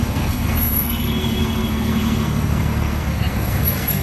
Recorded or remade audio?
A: remade